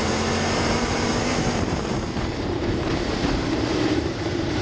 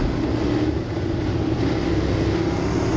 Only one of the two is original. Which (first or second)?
second